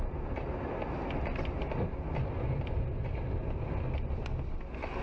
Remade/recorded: recorded